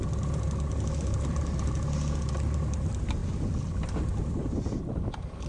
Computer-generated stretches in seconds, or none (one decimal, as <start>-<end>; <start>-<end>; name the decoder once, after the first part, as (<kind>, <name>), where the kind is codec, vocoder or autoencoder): none